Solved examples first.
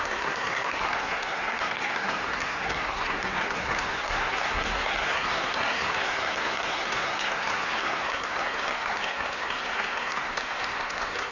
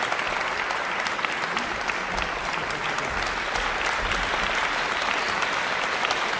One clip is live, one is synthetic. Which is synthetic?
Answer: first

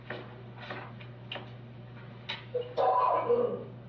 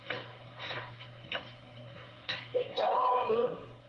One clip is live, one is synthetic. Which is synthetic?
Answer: second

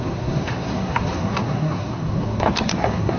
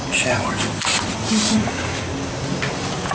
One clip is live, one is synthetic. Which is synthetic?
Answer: first